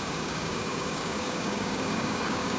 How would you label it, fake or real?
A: fake